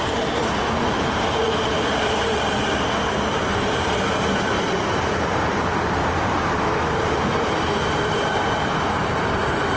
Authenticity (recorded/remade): remade